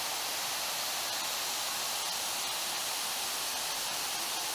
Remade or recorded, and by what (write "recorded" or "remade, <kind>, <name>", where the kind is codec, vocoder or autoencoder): recorded